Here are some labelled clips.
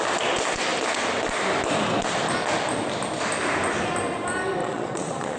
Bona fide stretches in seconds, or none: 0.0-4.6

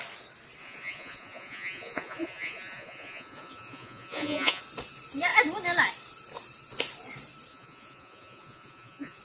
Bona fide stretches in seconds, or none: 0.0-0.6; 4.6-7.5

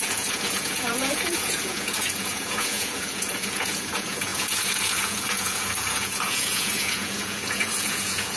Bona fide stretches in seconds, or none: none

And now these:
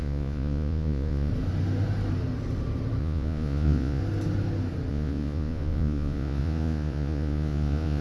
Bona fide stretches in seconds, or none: 1.3-3.0; 4.0-4.9